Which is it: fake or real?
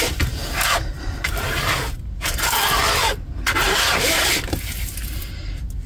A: real